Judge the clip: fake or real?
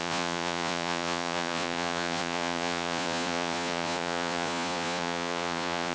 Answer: fake